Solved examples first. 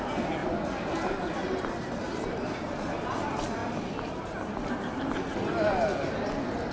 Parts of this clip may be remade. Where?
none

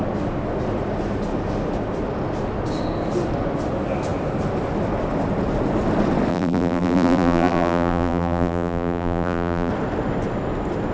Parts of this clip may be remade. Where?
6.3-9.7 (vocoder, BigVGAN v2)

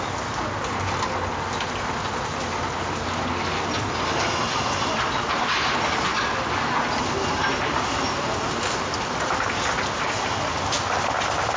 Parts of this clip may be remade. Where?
none

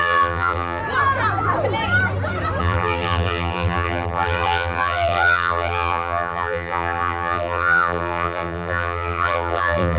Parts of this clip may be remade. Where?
0.0-0.8 (vocoder, BigVGAN v2); 2.6-10.0

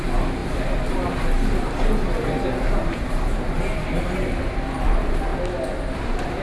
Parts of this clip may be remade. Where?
0.0-5.3 (vocoder, BigVGAN v2); 5.8-6.4

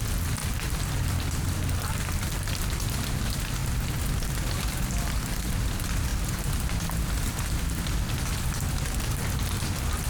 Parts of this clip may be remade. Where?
0.4-2.6 (vocoder, BigVGAN v2)

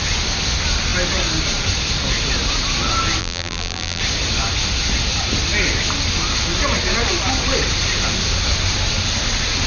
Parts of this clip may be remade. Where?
3.2-4.0 (vocoder, BigVGAN v2)